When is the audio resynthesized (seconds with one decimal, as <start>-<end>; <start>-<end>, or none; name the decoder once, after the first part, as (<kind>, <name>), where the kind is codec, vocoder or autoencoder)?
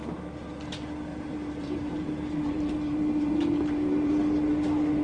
1.1-4.1 (vocoder, BigVGAN v2)